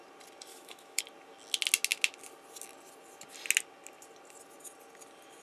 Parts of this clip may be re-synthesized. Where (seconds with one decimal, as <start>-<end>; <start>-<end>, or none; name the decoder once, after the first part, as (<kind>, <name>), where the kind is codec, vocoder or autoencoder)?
0.5-1.0 (autoencoder, DAC-VAE)

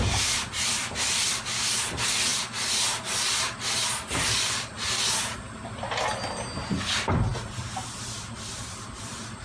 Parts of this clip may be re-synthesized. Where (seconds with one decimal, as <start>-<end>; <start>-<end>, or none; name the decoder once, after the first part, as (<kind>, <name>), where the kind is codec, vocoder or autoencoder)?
none

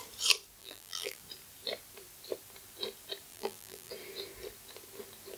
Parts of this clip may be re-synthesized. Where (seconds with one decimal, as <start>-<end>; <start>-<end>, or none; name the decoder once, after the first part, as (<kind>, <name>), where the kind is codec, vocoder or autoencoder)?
0.6-1.2 (vocoder, BigVGAN v2); 3.3-3.9